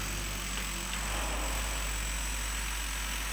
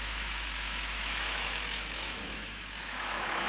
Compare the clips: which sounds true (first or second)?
first